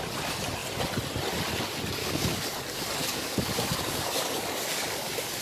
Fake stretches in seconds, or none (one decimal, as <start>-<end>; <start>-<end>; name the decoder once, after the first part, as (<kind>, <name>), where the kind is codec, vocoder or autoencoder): 2.0-5.4 (codec, DAC)